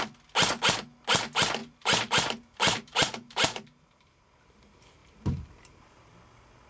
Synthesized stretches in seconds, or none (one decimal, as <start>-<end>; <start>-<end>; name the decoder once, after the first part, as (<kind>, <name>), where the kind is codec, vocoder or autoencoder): 1.6-4.2 (vocoder, BigVGAN v2); 5.0-6.0